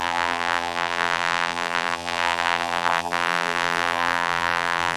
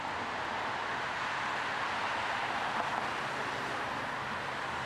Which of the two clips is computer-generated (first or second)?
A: first